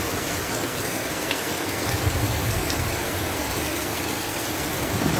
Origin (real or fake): fake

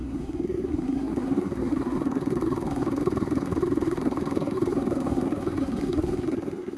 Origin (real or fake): fake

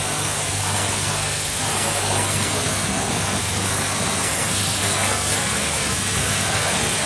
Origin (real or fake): fake